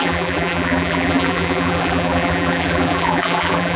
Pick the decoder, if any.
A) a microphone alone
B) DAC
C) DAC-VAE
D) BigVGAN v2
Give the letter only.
D